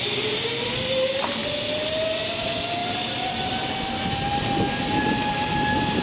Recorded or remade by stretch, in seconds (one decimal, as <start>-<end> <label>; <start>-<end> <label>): 0.0-2.8 recorded; 2.8-3.5 remade; 3.5-6.0 recorded